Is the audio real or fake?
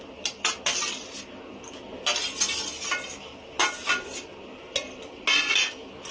real